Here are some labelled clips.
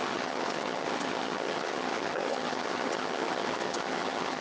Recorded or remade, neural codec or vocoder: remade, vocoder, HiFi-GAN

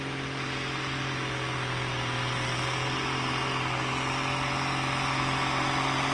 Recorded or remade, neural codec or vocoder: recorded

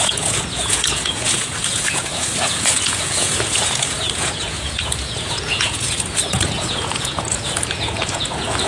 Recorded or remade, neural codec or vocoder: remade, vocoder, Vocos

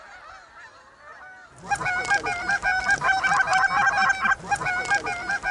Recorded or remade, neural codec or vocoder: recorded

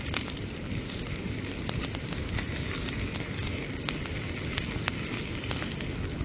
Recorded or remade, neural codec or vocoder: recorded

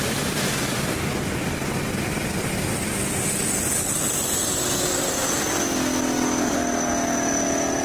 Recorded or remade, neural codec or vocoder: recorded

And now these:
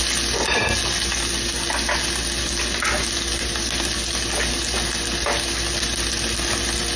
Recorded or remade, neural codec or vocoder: recorded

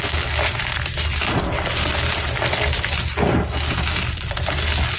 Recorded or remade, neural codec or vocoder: recorded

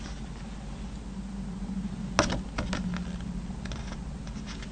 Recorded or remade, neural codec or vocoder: recorded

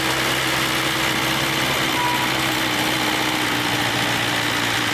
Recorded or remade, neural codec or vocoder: recorded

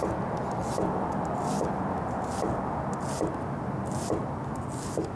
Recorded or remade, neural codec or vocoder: recorded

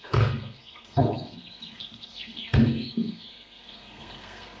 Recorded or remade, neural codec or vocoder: remade, codec, SNAC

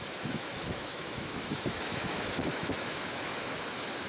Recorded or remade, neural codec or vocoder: remade, autoencoder, DAC-VAE